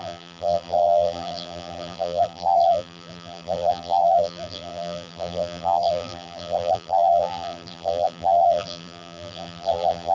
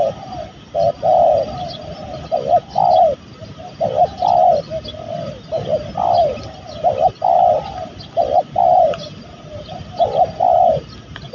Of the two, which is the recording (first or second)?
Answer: second